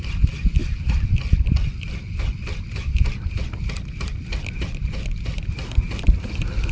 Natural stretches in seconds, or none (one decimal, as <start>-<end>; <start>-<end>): 0.0-6.7

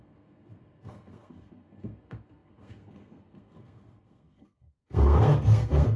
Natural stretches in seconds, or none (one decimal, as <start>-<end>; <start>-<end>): none